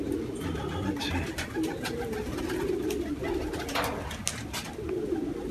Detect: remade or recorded recorded